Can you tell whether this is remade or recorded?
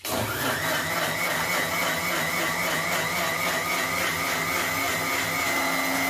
recorded